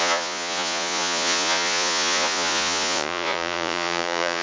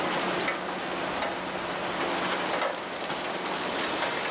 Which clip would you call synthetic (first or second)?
first